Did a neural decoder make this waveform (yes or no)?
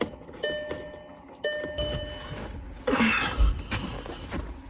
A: no